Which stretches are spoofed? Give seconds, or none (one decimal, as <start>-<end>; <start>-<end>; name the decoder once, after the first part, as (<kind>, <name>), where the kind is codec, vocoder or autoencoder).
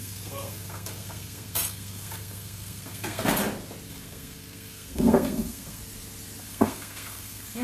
0.0-3.4 (codec, SNAC); 3.9-5.8; 6.4-7.6